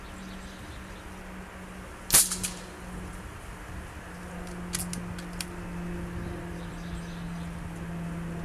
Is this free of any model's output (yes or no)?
yes